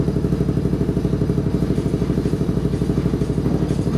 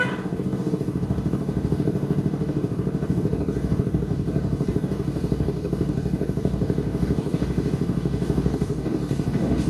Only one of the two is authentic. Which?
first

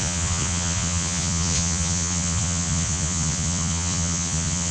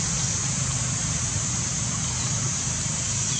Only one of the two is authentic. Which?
second